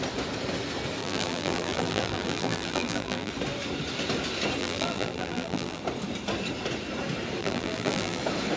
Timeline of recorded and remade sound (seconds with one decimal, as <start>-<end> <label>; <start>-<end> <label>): 0.0-1.0 recorded; 1.0-3.3 remade; 3.3-4.6 recorded; 4.6-5.8 remade; 5.8-7.4 recorded; 7.4-8.2 remade; 8.2-8.6 recorded